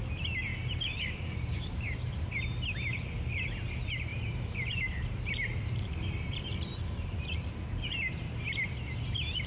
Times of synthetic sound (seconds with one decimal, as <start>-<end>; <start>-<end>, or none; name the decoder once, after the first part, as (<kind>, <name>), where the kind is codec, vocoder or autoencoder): 0.5-2.3 (vocoder, BigVGAN v2); 4.1-8.4